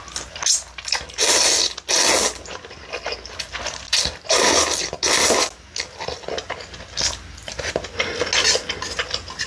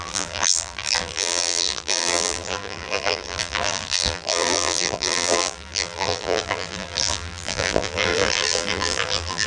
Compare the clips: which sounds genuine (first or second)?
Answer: first